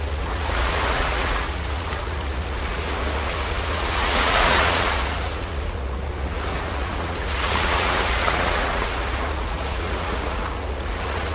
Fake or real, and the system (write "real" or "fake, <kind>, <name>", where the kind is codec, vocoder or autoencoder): fake, vocoder, Vocos